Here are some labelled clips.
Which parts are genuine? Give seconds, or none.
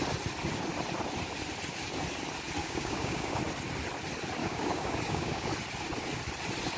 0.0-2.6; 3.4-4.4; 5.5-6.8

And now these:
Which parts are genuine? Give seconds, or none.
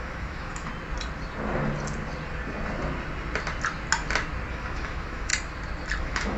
0.7-4.5; 5.3-6.0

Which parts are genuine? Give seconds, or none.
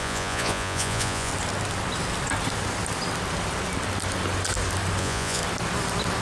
1.3-5.0; 5.4-6.2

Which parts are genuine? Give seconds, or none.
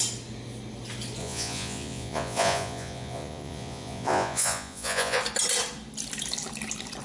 0.0-1.2; 5.2-7.0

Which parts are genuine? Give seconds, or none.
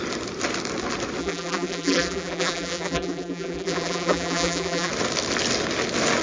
0.0-1.2; 4.9-6.2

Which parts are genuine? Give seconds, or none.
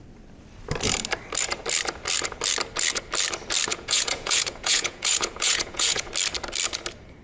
0.0-3.7; 6.1-7.2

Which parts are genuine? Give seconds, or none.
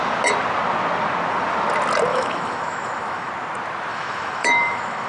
0.0-2.1; 3.3-3.9